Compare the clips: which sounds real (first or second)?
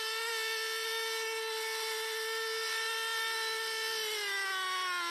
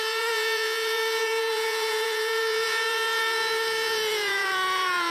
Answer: first